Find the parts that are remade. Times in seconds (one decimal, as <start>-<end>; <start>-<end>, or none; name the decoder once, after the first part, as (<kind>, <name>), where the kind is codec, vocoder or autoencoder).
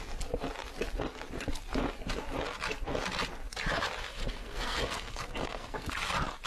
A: 4.1-5.9 (codec, SNAC)